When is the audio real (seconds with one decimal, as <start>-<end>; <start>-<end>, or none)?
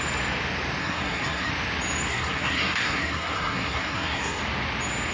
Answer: 0.0-0.8; 1.5-2.1; 4.4-5.1